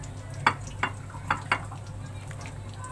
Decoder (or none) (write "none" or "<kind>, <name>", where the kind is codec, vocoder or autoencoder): none